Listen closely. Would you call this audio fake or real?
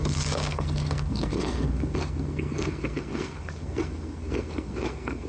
fake